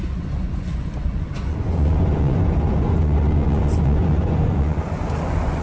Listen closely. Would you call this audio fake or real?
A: fake